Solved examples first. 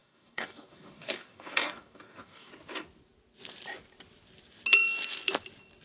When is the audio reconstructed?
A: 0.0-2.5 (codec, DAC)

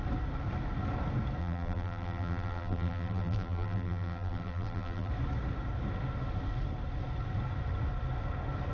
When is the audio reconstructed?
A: 1.4-5.1 (vocoder, BigVGAN v2)

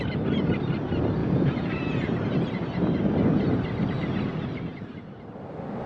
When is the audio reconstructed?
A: 1.2-1.7 (vocoder, Vocos)

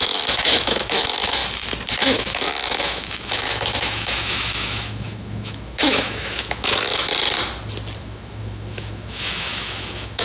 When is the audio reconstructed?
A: 0.0-1.4 (autoencoder, DAC-VAE); 1.9-7.1; 8.0-10.2

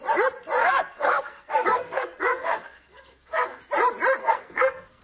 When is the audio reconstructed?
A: 0.6-3.6 (codec, SNAC); 4.2-5.0

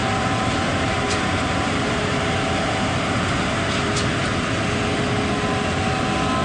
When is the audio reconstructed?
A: 0.0-2.3 (vocoder, BigVGAN v2)